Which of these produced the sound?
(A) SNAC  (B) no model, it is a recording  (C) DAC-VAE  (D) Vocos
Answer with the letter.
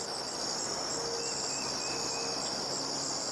B